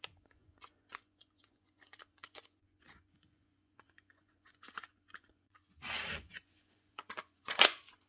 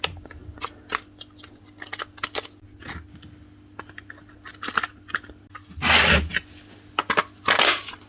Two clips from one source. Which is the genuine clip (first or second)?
second